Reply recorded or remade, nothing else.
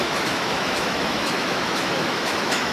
remade